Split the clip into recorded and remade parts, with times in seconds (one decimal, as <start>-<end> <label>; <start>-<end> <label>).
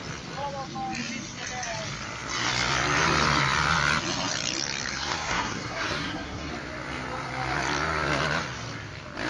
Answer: 0.0-4.9 recorded; 4.9-6.5 remade; 6.5-9.3 recorded